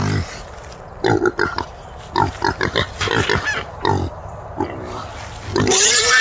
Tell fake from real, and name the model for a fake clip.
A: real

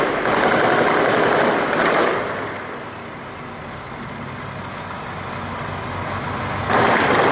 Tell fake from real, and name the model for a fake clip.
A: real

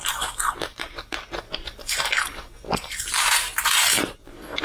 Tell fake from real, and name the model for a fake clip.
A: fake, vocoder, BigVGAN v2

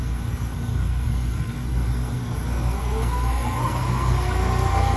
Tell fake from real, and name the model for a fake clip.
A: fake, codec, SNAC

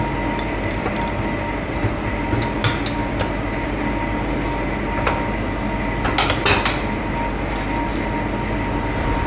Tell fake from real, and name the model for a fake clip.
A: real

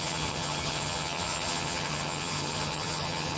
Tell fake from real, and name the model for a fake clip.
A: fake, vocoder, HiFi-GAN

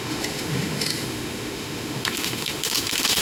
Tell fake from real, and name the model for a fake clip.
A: fake, autoencoder, DAC-VAE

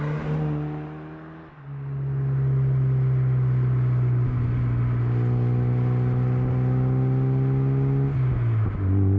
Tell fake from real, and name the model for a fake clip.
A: real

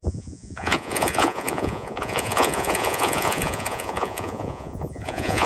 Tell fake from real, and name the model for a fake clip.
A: fake, vocoder, Vocos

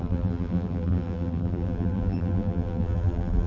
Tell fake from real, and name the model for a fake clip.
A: fake, vocoder, BigVGAN v2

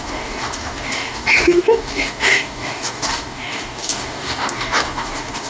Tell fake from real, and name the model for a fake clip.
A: fake, codec, DAC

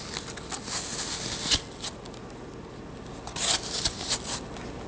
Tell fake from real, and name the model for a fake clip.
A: real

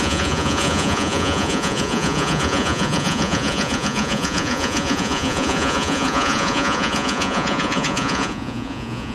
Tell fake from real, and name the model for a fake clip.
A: fake, vocoder, Vocos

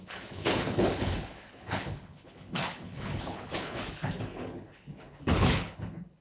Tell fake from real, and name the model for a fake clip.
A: fake, codec, HILCodec